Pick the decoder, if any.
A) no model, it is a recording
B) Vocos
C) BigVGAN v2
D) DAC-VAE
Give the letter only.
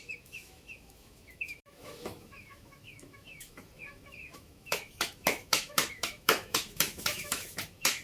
D